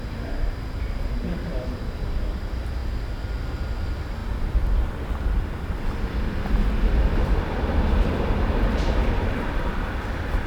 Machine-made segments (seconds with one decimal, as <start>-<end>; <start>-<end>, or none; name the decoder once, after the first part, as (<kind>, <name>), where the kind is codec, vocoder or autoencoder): 0.0-2.8 (vocoder, BigVGAN v2); 3.4-4.2; 6.9-10.5